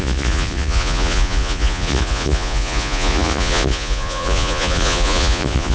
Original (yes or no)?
no